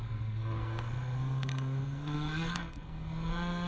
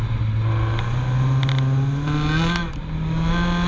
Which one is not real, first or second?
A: first